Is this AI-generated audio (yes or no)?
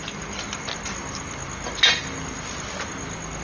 no